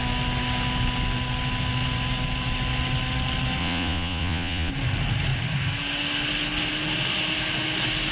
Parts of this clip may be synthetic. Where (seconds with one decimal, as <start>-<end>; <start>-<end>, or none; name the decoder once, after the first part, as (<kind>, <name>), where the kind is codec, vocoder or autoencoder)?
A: 3.6-4.7 (vocoder, Vocos)